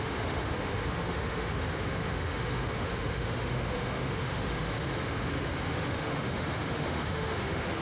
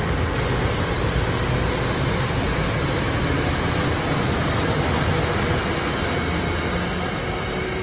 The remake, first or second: first